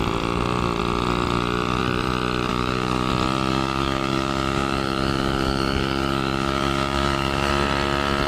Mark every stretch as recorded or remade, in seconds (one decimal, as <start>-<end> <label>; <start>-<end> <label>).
0.0-2.5 recorded; 2.5-3.1 remade; 3.1-3.5 recorded; 3.5-7.5 remade; 7.5-8.3 recorded